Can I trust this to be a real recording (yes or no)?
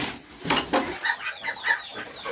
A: yes